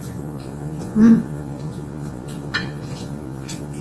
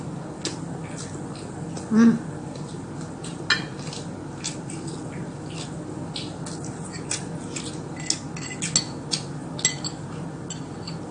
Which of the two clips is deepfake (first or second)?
first